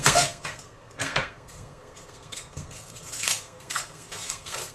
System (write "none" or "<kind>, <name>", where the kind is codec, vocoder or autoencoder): codec, SNAC